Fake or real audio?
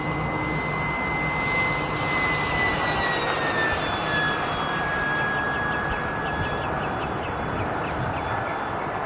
real